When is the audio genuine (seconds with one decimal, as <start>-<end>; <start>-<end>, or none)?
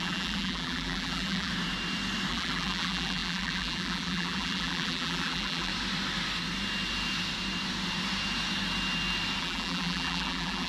1.5-2.3; 5.7-9.4